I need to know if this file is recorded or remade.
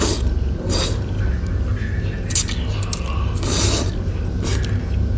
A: recorded